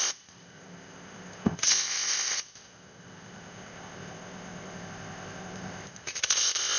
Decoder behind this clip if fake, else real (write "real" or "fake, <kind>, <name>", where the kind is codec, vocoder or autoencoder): fake, codec, ZipCodec